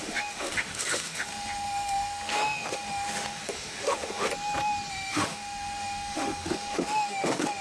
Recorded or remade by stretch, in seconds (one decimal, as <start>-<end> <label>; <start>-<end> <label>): 0.0-4.3 remade; 4.3-4.9 recorded; 4.9-7.6 remade